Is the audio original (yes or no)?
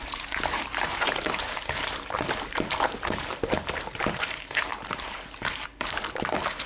no